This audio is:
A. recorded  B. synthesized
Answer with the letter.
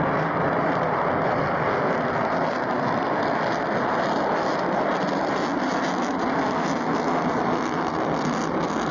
A